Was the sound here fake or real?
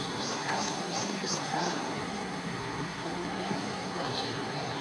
fake